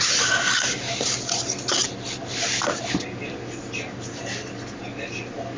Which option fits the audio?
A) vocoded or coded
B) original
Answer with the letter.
B